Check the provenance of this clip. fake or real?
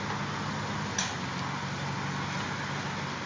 real